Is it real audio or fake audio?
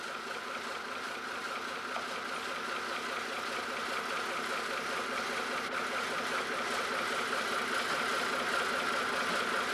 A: real